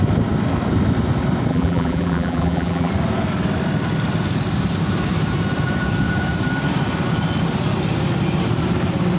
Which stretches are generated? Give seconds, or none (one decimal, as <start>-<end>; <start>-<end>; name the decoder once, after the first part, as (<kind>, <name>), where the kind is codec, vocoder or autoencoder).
1.5-2.9 (vocoder, BigVGAN v2)